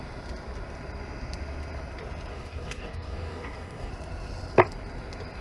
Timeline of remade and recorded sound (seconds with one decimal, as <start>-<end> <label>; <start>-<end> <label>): 0.0-2.3 recorded; 2.3-3.9 remade; 3.9-5.4 recorded